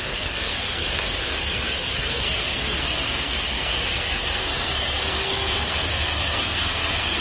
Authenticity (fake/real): fake